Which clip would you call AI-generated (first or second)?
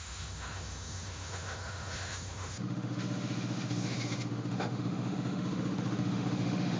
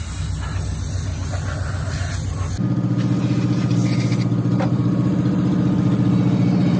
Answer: first